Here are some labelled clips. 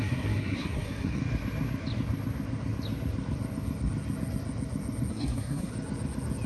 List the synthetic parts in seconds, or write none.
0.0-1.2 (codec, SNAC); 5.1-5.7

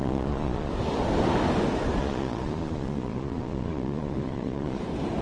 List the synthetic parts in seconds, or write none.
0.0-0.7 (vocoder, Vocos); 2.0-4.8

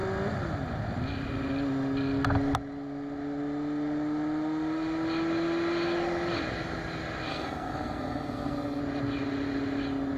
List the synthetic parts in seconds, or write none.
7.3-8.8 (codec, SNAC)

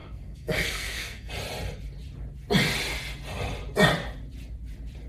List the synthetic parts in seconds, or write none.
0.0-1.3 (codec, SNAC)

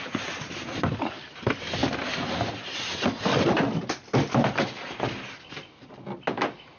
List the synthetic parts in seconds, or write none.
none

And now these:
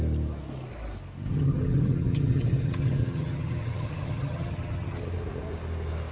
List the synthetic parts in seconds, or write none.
1.3-5.0 (vocoder, HiFi-GAN)

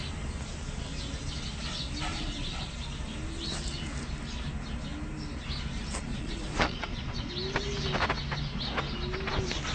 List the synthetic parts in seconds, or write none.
2.1-2.7 (vocoder, Vocos); 6.1-7.3